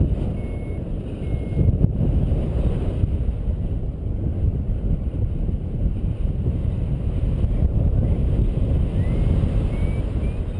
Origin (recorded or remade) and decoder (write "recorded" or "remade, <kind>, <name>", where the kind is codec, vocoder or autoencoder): recorded